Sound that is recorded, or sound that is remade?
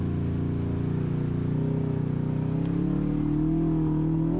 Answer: recorded